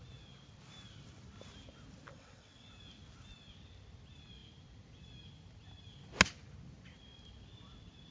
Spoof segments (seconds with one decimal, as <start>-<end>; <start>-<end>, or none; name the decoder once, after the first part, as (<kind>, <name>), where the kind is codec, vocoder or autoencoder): 2.1-2.7 (vocoder, WaveNeXt)